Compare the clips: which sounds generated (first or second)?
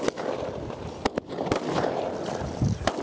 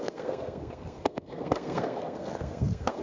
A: second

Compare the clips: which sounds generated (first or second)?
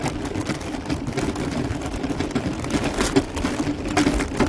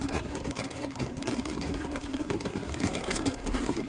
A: second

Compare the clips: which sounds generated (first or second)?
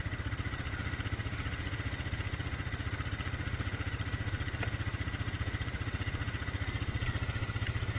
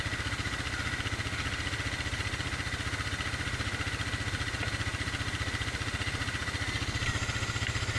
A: first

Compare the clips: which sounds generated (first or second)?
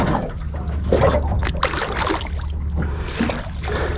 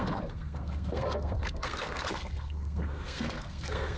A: second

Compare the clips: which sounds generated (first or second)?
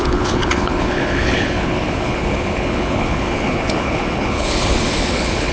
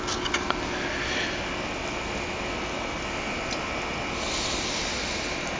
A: first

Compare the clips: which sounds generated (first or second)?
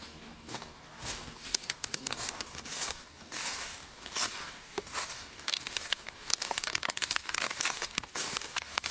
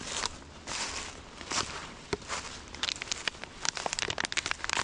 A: first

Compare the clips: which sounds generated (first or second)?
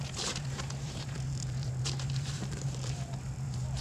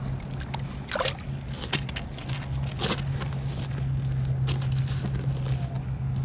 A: first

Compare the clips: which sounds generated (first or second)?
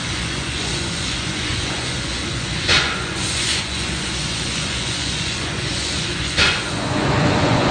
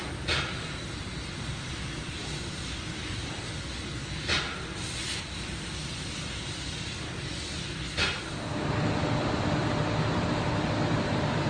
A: first